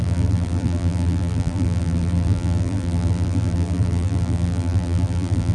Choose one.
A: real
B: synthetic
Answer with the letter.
B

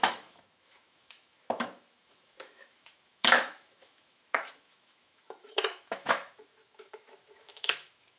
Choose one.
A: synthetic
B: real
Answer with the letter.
A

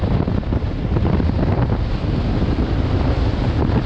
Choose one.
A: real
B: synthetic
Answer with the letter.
A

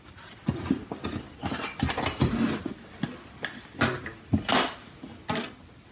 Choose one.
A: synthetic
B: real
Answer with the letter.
B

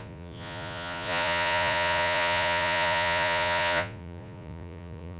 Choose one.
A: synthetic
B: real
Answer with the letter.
A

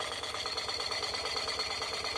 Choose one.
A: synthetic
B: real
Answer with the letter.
B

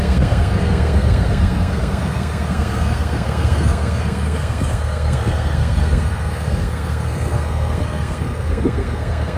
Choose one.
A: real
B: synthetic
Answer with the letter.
B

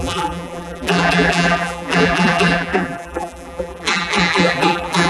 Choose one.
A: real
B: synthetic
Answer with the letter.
B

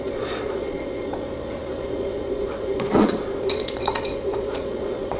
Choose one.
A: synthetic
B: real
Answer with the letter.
A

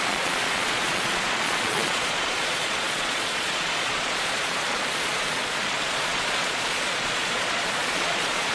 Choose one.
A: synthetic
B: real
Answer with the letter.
A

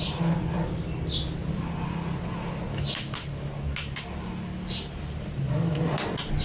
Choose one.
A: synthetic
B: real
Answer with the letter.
B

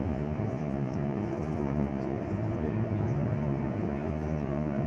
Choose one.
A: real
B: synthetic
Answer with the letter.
B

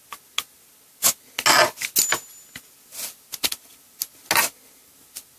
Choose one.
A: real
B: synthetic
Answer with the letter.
A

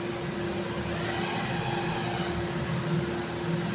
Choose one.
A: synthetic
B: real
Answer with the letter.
B